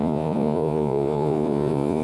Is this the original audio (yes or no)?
no